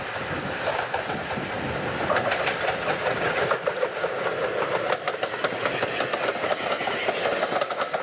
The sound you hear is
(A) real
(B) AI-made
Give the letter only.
A